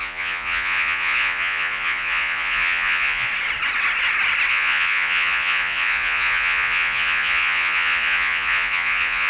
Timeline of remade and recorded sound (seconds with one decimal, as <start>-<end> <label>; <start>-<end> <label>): 0.0-3.3 remade; 3.3-4.5 recorded; 4.5-9.3 remade